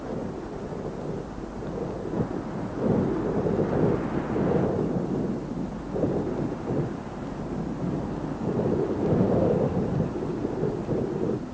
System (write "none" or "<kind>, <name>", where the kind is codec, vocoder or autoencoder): none